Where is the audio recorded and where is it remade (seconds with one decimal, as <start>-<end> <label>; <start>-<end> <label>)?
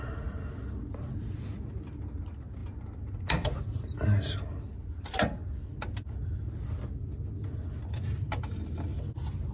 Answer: 0.0-9.5 recorded